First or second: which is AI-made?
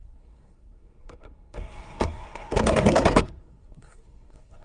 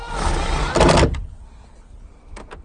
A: first